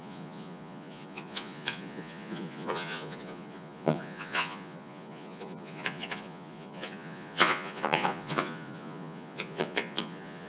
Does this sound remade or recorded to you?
remade